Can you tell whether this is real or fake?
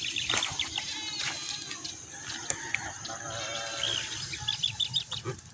real